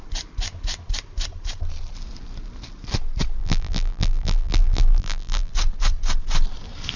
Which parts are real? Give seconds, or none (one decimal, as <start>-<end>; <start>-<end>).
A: 0.0-3.4; 5.5-7.0